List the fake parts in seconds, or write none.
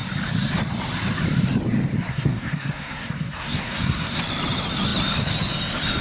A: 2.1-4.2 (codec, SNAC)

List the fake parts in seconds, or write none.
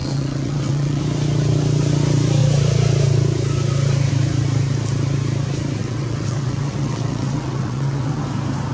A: 0.0-1.0 (vocoder, WaveNeXt); 5.8-8.2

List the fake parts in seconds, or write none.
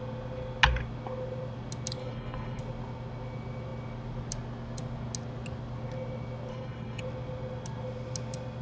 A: 2.0-2.6 (codec, HILCodec); 6.5-7.0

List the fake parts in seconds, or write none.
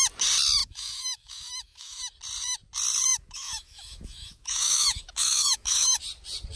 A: 0.6-2.0 (autoencoder, DAC-VAE); 3.1-6.0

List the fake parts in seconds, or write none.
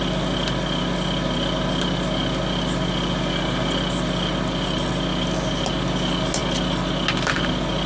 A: none